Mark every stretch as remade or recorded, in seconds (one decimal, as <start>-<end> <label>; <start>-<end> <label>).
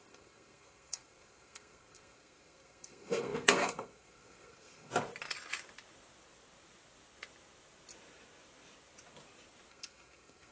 0.0-4.9 remade; 4.9-9.7 recorded; 9.7-10.5 remade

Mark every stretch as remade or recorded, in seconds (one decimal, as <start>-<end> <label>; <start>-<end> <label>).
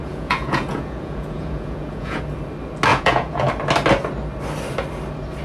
0.0-2.2 remade; 2.2-2.9 recorded; 2.9-3.5 remade; 3.5-5.4 recorded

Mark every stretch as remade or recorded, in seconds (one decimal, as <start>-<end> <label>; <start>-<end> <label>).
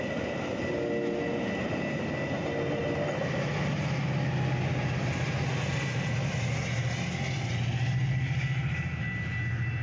0.0-9.8 recorded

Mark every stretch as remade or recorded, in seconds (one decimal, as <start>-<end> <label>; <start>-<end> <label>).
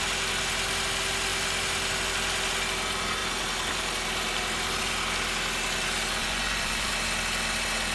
0.0-6.2 recorded; 6.2-6.9 remade; 6.9-7.9 recorded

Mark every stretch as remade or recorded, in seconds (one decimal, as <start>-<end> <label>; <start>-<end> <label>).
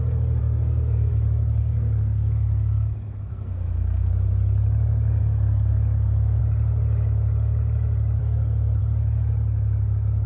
0.0-0.4 recorded; 0.4-1.1 remade; 1.1-1.6 recorded; 1.6-4.1 remade; 4.1-5.2 recorded; 5.2-6.4 remade; 6.4-8.2 recorded; 8.2-8.8 remade; 8.8-10.3 recorded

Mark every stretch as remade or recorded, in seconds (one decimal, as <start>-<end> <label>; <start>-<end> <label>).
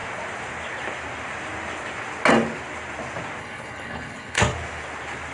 0.0-3.4 recorded; 3.4-4.4 remade; 4.4-5.3 recorded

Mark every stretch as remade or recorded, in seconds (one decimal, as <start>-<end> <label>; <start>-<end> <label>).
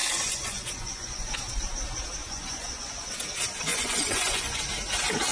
0.0-1.3 remade; 1.3-2.2 recorded; 2.2-3.1 remade; 3.1-3.7 recorded; 3.7-4.6 remade; 4.6-5.3 recorded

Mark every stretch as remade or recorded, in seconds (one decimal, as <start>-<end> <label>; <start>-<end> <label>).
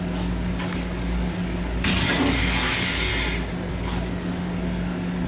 0.0-3.1 remade; 3.1-3.7 recorded; 3.7-5.3 remade